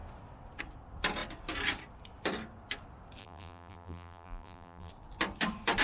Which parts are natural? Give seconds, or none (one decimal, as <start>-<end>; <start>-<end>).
0.0-3.2; 4.9-5.8